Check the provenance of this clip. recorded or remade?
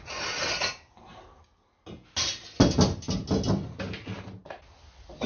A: recorded